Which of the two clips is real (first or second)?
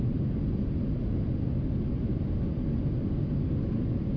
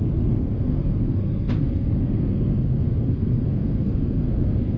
first